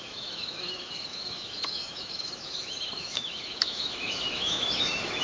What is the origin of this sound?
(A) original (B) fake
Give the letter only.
B